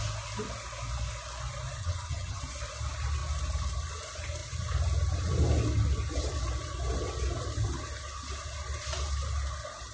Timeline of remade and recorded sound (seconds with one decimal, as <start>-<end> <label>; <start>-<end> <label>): 0.0-1.8 recorded; 1.8-2.4 remade; 2.4-9.9 recorded